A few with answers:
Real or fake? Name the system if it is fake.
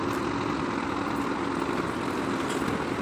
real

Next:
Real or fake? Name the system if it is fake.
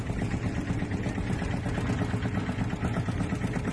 real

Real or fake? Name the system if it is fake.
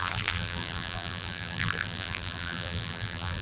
fake, vocoder, BigVGAN v2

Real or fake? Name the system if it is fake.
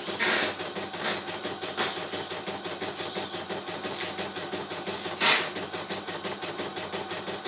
real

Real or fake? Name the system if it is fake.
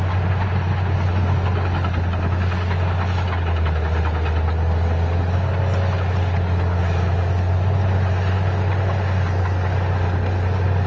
real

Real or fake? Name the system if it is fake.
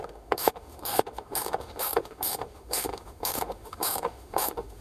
fake, autoencoder, DAC-VAE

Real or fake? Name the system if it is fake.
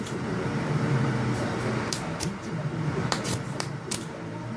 fake, vocoder, BigVGAN v2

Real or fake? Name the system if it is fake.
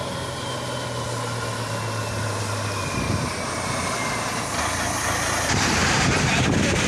real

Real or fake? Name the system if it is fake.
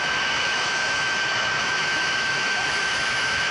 fake, autoencoder, DAC-VAE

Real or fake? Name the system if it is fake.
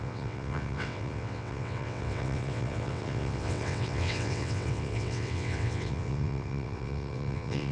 fake, vocoder, WaveNeXt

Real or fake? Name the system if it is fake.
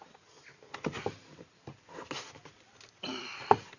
real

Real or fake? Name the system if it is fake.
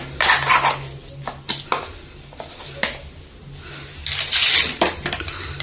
real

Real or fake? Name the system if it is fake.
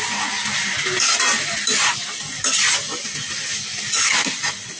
real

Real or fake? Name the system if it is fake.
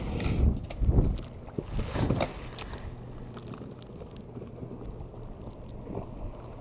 real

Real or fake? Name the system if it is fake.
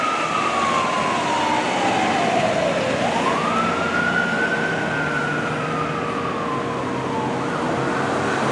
real